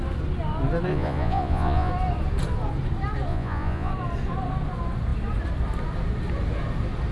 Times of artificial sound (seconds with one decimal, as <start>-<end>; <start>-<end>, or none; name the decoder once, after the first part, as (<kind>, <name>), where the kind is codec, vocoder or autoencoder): 0.9-1.9 (vocoder, Vocos); 3.3-3.9